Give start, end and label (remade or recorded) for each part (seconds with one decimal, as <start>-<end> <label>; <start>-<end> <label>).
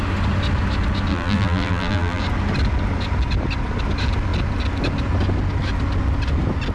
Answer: 0.0-1.1 recorded; 1.1-2.2 remade; 2.2-6.7 recorded